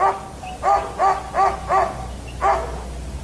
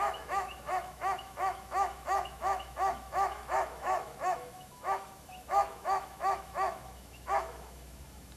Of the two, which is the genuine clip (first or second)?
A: first